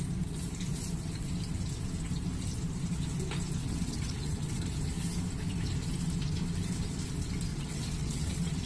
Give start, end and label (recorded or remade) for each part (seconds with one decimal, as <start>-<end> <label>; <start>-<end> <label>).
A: 0.0-3.6 recorded; 3.6-4.6 remade; 4.6-7.5 recorded; 7.5-8.7 remade